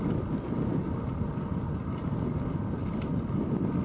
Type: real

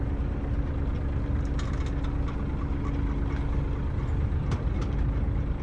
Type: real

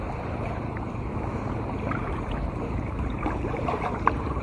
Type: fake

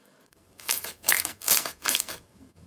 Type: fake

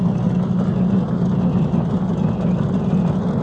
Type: real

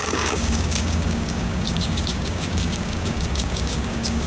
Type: fake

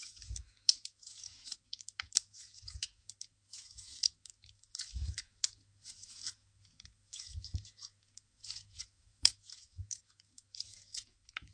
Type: fake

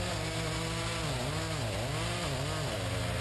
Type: real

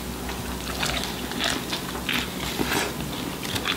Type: real